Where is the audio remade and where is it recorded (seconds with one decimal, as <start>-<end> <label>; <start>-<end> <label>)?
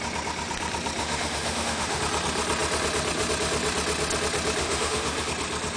0.0-1.0 recorded; 1.0-2.0 remade; 2.0-4.6 recorded; 4.6-5.3 remade; 5.3-5.8 recorded